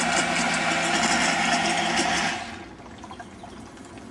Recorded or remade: recorded